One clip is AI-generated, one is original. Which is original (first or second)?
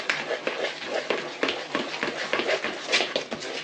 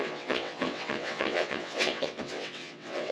first